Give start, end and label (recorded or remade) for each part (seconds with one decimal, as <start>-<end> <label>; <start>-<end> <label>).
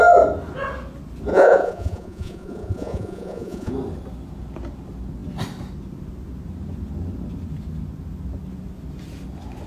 0.0-1.3 recorded; 1.3-3.7 remade; 3.7-9.7 recorded